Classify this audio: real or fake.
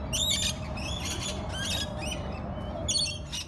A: real